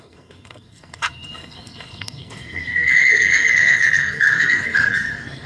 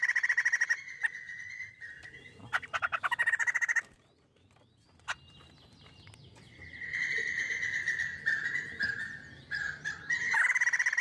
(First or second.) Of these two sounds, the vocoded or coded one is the first